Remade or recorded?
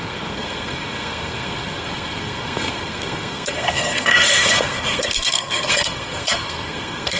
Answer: remade